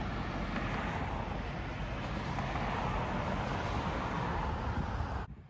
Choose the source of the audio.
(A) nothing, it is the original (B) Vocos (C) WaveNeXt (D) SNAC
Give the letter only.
A